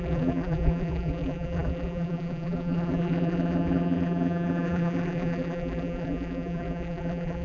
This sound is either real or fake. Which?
fake